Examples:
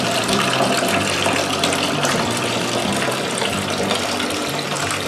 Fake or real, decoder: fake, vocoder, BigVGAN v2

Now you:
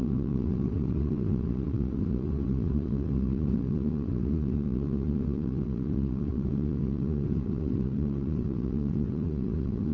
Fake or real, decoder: fake, vocoder, WaveNeXt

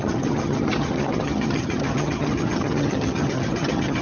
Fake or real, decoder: fake, vocoder, HiFi-GAN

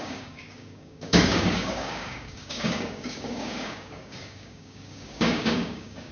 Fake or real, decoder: fake, codec, DAC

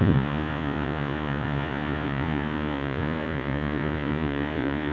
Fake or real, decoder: fake, vocoder, Vocos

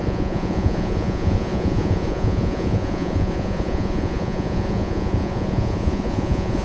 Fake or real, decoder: fake, vocoder, Vocos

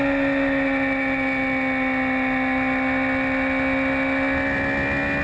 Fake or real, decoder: real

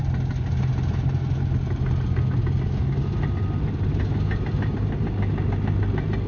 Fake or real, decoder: real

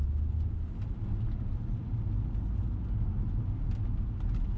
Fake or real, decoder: real